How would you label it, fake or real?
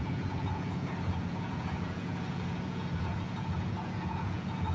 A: fake